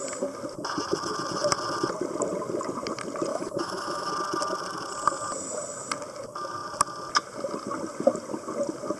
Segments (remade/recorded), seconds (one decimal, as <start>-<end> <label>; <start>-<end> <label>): 0.0-3.3 recorded; 3.3-4.1 remade; 4.1-9.0 recorded